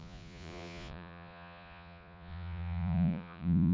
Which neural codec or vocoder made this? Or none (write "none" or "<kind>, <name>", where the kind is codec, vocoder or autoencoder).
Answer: vocoder, Vocos